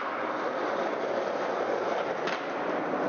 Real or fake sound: real